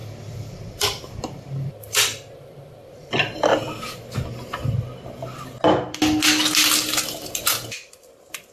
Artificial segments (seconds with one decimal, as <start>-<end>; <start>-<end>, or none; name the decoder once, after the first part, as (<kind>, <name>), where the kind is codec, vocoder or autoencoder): 0.0-3.5 (vocoder, BigVGAN v2); 7.3-8.5

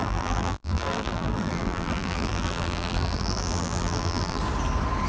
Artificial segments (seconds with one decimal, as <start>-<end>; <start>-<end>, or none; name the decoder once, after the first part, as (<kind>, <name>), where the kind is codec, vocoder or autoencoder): 0.0-4.4 (vocoder, BigVGAN v2)

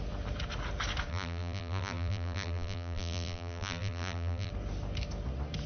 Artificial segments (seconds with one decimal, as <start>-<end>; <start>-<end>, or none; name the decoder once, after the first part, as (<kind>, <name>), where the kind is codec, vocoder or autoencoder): 1.1-4.5 (vocoder, BigVGAN v2)